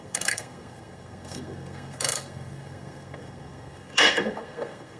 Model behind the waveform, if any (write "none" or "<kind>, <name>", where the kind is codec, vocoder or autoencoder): codec, SNAC